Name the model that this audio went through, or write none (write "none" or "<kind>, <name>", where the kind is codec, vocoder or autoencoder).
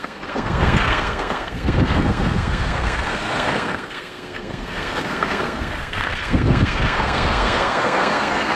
codec, SNAC